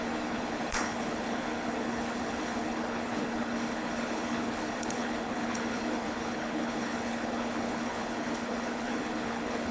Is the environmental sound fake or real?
fake